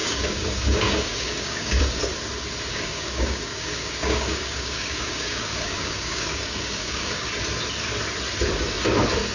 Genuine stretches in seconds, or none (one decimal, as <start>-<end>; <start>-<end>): 1.8-2.7; 7.3-9.3